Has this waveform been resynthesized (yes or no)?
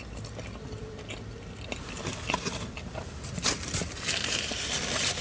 no